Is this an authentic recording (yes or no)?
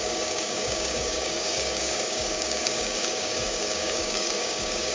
no